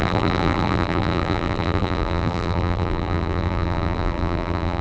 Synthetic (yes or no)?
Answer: yes